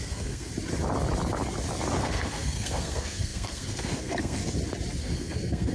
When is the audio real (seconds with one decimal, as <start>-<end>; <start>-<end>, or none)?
0.5-2.0; 4.4-5.0